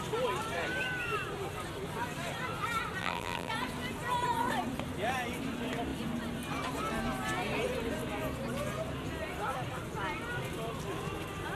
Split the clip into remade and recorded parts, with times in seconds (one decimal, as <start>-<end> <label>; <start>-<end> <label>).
0.0-3.0 recorded; 3.0-3.5 remade; 3.5-11.6 recorded